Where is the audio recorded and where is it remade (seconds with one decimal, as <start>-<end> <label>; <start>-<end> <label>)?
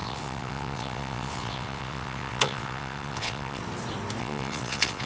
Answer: 0.0-3.6 remade; 3.6-4.2 recorded; 4.2-5.1 remade